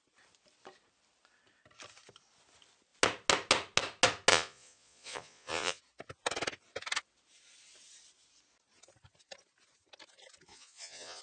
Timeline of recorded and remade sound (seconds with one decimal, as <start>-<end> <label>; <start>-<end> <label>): 0.0-4.3 recorded; 4.3-5.8 remade; 5.8-10.5 recorded; 10.5-11.2 remade

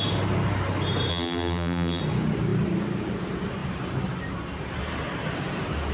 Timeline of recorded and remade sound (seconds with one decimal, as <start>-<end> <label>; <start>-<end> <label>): 0.0-1.1 recorded; 1.1-2.0 remade; 2.0-5.9 recorded